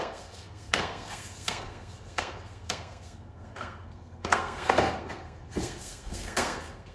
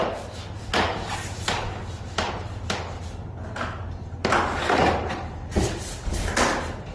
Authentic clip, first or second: second